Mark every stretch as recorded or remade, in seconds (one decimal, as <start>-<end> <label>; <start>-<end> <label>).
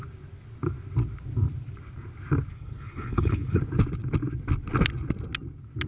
0.0-2.5 recorded; 2.5-3.6 remade; 3.6-5.9 recorded